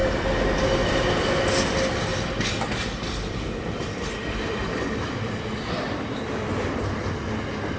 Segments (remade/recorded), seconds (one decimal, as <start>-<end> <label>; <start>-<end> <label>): 0.0-1.0 remade; 1.0-2.1 recorded; 2.1-6.8 remade; 6.8-7.8 recorded